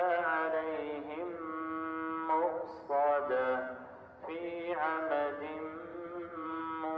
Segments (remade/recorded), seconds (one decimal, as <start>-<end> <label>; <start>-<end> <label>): 0.0-5.9 recorded; 5.9-6.6 remade; 6.6-7.0 recorded